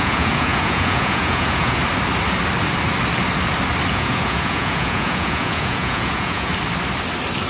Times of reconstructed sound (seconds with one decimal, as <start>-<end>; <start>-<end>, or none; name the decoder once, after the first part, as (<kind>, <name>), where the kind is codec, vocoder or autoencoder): 0.0-1.8 (vocoder, Vocos); 3.9-6.5